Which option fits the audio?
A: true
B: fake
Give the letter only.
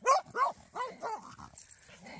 A